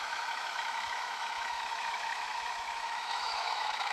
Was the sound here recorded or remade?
remade